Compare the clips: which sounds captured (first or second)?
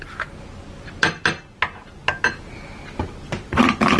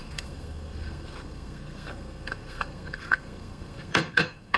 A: first